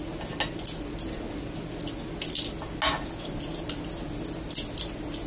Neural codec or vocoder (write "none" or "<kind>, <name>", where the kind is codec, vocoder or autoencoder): none